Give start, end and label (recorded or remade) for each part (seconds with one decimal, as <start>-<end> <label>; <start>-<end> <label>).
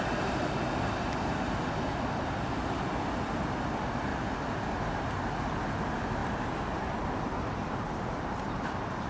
0.0-9.1 recorded